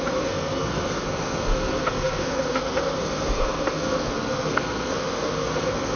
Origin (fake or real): fake